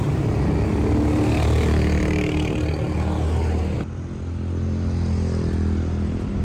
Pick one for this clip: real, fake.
real